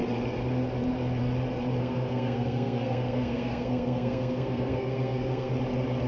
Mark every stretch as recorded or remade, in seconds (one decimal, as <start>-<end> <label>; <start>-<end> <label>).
0.0-1.8 recorded; 1.8-5.5 remade; 5.5-6.1 recorded